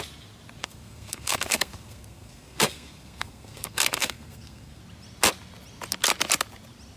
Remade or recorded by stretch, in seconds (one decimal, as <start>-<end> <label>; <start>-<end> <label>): 0.0-0.6 recorded; 0.6-4.8 remade; 4.8-7.0 recorded